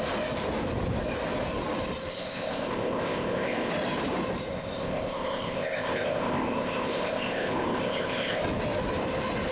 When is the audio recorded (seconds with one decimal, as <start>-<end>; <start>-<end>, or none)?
0.0-2.1; 3.7-4.5; 8.4-9.5